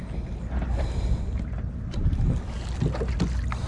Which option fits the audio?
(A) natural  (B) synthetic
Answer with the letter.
A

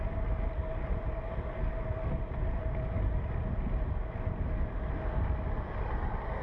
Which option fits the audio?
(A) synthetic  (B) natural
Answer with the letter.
B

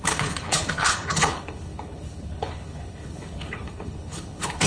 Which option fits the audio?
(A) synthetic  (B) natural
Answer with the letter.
A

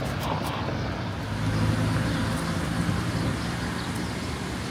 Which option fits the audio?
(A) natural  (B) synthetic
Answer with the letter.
A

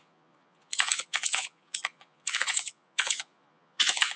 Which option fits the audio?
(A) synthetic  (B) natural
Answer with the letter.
A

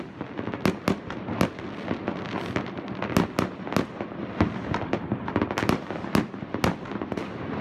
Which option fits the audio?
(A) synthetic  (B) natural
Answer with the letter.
B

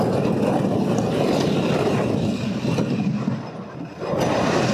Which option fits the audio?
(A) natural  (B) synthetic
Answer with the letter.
A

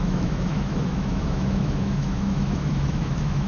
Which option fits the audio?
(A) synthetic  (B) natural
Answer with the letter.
A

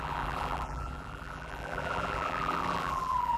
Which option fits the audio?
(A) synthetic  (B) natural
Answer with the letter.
A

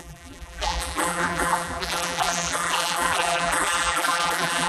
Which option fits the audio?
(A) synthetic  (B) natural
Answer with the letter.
A